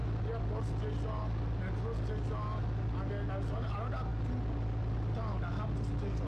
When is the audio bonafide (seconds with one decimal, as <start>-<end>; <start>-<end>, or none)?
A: 0.0-6.3